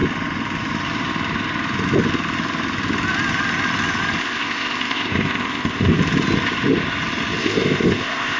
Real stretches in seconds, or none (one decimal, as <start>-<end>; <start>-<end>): 0.0-4.2; 6.0-7.4